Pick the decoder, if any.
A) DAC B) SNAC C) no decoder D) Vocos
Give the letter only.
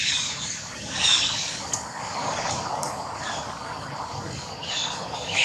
A